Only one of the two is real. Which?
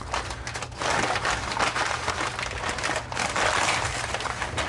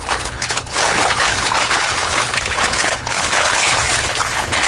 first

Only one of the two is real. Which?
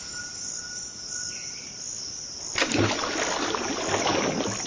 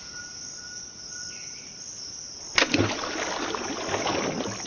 second